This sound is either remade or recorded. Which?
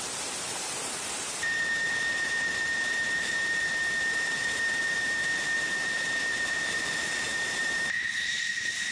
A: remade